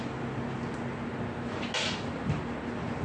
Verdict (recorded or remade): recorded